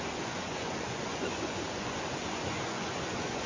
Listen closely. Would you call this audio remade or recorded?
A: remade